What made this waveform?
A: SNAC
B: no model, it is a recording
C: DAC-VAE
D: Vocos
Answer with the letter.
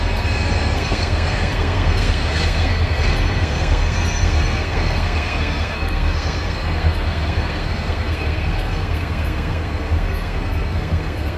A